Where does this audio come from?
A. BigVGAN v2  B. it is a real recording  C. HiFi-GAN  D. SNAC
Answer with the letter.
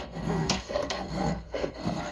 D